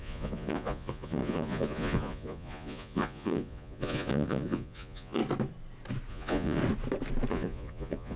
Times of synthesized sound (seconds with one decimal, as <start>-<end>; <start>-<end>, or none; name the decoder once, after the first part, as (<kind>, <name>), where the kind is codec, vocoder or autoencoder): 0.0-5.2 (vocoder, Vocos); 6.1-6.6; 7.3-8.2